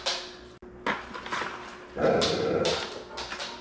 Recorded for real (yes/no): yes